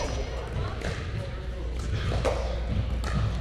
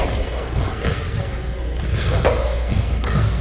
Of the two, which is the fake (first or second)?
second